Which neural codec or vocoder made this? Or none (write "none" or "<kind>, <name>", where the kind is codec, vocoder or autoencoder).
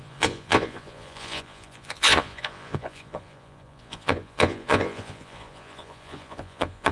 vocoder, Vocos